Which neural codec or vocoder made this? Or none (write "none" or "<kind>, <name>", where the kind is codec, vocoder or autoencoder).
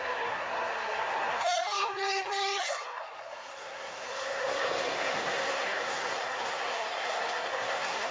codec, SNAC